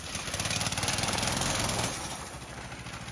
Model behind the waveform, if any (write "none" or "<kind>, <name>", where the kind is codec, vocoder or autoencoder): none